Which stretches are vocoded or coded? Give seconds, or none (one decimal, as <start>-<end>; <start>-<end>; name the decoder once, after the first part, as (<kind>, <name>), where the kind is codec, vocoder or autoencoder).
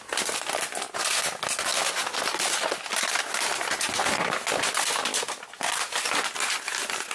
none